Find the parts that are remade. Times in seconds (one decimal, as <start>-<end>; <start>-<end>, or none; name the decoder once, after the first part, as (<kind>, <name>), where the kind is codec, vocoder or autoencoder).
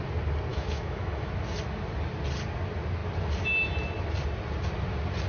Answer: 0.5-1.3 (autoencoder, DAC-VAE)